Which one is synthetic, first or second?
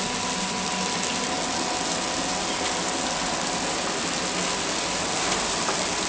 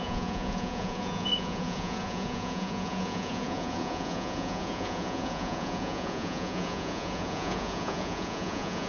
second